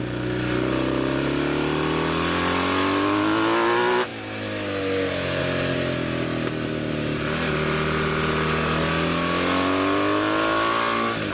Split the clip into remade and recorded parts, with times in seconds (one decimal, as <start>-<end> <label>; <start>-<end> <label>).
0.0-11.3 recorded